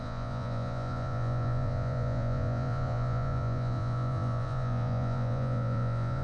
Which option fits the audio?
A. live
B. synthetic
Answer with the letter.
B